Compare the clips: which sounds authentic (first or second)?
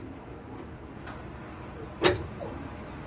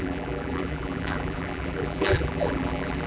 first